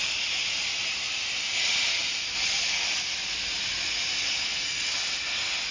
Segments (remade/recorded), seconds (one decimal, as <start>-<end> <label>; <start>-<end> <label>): 0.0-5.7 recorded